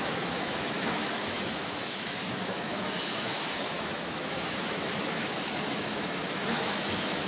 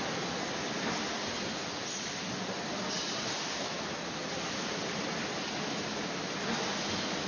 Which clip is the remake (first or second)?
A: first